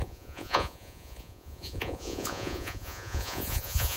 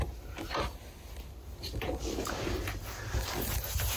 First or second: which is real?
second